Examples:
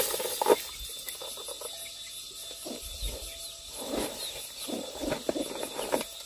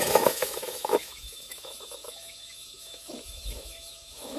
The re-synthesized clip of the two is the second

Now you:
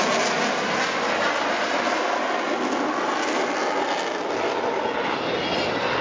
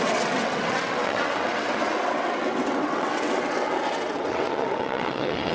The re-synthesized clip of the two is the second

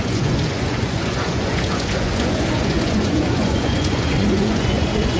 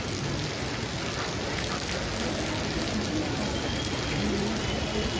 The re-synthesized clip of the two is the first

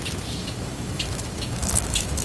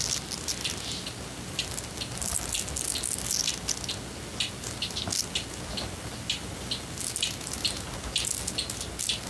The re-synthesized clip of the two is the first